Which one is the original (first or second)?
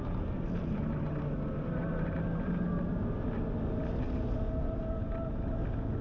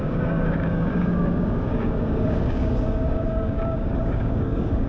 first